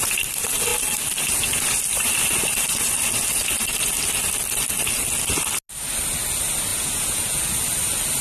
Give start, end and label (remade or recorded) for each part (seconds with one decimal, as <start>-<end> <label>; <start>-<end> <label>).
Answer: 0.0-6.7 recorded; 6.7-7.4 remade; 7.4-8.2 recorded